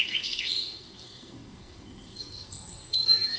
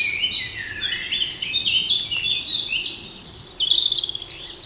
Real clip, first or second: second